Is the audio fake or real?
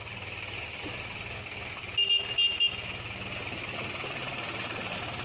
real